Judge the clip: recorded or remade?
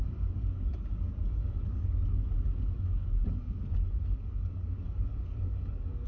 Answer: remade